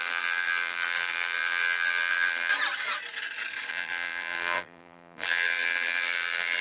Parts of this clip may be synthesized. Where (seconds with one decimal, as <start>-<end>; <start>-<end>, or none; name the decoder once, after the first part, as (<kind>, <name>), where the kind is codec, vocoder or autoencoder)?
0.0-2.5 (vocoder, BigVGAN v2); 3.7-6.6